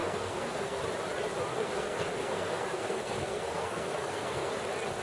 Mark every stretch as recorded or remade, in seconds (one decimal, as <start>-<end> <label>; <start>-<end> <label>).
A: 0.0-0.8 remade; 0.8-1.5 recorded; 1.5-4.5 remade; 4.5-5.0 recorded